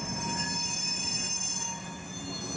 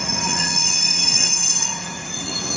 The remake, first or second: second